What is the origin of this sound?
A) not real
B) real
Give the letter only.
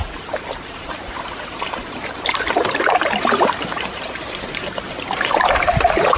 A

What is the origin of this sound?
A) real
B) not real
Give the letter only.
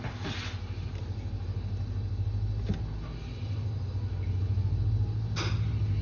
A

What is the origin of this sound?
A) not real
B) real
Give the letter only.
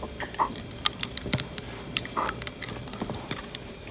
A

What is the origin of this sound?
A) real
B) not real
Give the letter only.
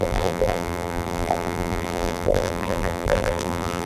B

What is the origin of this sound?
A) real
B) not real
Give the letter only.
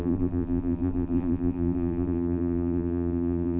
B